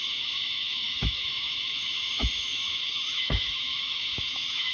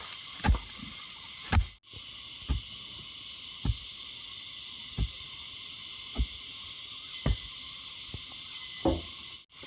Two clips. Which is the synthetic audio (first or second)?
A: first